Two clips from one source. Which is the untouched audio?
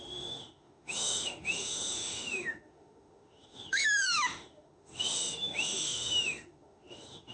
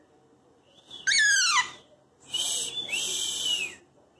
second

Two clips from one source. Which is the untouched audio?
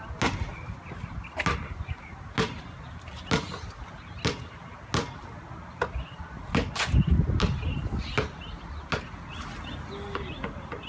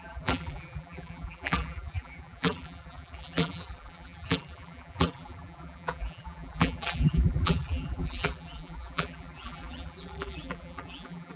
first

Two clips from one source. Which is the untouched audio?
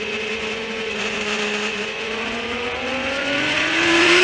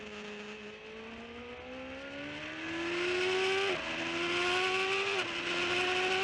second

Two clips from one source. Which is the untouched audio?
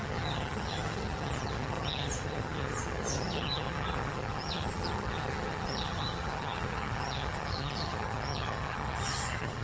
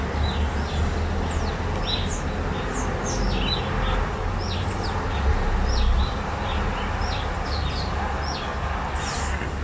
second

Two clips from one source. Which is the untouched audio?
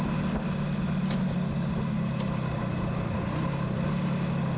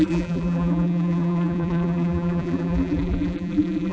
first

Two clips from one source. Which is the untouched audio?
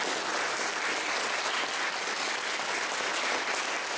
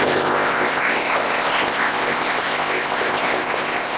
first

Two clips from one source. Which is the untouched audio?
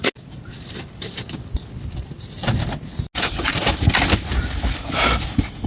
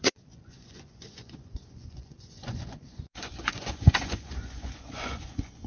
first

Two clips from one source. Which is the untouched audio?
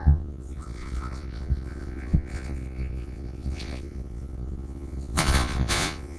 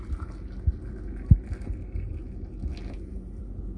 second